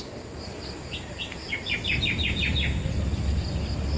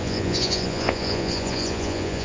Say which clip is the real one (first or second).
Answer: first